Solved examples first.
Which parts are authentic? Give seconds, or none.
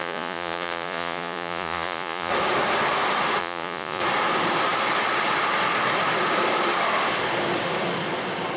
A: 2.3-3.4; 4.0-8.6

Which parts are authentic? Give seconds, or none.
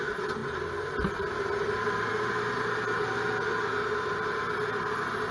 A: 0.0-5.3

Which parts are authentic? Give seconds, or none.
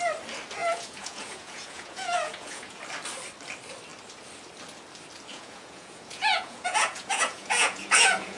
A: 0.0-0.6; 2.8-5.3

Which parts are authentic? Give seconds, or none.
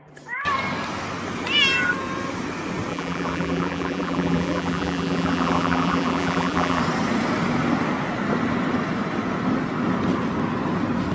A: 0.0-2.9; 6.8-11.1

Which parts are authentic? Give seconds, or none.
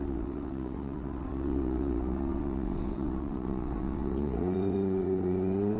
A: none